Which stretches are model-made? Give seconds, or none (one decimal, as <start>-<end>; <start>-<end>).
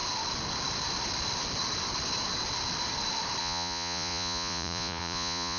3.4-5.6